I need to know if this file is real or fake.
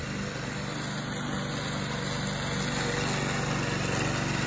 real